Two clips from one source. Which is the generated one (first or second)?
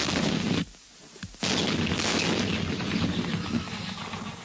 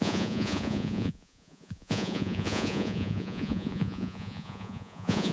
second